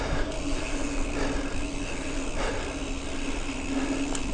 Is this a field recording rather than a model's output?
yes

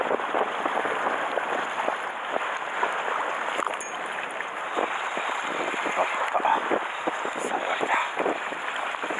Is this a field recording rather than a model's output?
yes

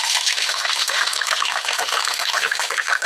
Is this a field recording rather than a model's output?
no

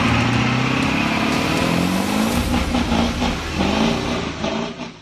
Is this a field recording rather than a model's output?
yes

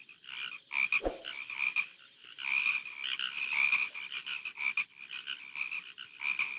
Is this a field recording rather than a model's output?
yes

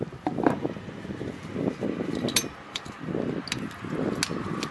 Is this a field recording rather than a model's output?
yes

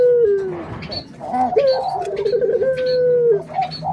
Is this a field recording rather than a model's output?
yes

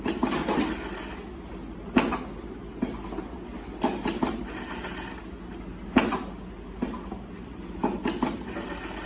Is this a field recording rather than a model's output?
yes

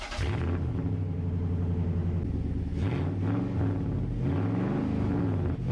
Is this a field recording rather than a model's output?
yes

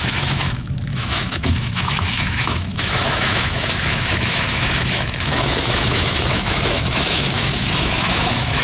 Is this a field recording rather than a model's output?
no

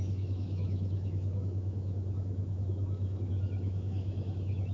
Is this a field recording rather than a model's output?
no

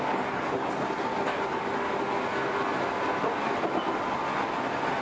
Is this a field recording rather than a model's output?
yes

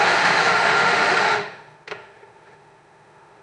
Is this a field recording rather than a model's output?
no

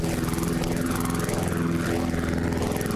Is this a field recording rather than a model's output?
yes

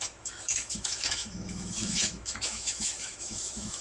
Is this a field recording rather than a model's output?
no